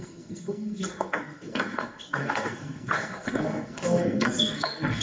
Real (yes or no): no